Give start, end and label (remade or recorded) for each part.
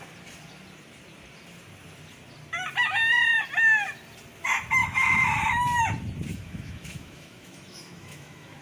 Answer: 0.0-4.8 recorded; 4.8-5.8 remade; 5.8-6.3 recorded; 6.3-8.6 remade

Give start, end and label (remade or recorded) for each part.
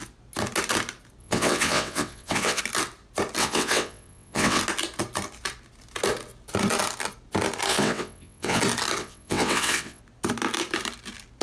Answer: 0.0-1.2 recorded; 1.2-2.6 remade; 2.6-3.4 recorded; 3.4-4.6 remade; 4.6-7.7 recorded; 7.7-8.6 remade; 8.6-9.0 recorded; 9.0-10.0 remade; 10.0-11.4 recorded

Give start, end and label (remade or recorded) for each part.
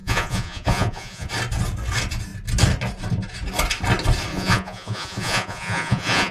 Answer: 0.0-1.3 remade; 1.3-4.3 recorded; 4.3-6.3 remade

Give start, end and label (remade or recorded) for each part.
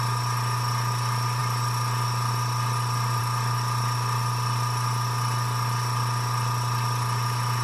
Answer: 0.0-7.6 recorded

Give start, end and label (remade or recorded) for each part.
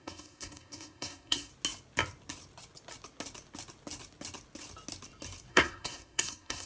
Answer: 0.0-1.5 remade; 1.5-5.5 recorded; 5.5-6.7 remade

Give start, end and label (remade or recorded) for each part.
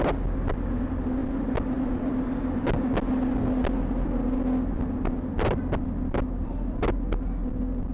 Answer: 0.0-7.9 recorded